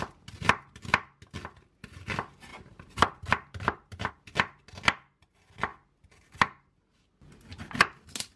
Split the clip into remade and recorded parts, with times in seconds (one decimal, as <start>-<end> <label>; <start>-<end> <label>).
0.0-2.5 recorded; 2.5-4.1 remade; 4.1-8.4 recorded